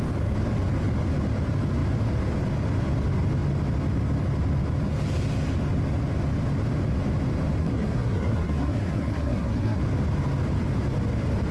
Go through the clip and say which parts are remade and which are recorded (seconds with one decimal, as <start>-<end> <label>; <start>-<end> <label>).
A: 0.0-7.6 recorded; 7.6-9.8 remade; 9.8-11.5 recorded

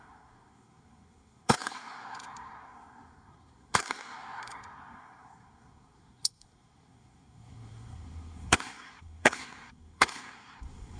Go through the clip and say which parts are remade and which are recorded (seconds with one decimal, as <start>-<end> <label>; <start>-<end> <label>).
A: 0.0-11.0 remade

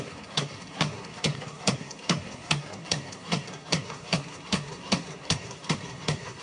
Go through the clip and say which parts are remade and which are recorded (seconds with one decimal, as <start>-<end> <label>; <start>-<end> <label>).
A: 0.0-6.4 remade

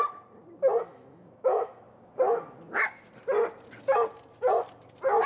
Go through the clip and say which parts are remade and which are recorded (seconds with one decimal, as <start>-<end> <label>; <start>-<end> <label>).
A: 0.0-0.9 recorded; 0.9-1.7 remade; 1.7-5.3 recorded

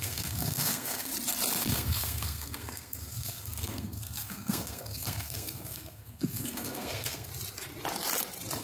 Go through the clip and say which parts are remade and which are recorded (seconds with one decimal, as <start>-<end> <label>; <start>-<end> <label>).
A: 0.0-1.1 remade; 1.1-1.6 recorded; 1.6-7.3 remade; 7.3-8.6 recorded

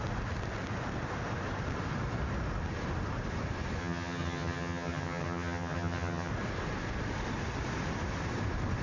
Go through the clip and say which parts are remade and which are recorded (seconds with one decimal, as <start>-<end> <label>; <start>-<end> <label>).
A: 0.0-3.8 recorded; 3.8-6.3 remade; 6.3-8.8 recorded

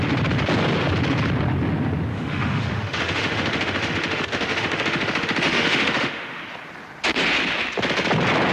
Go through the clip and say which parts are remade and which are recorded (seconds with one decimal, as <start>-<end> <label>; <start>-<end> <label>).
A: 0.0-2.1 recorded; 2.1-6.4 remade; 6.4-8.5 recorded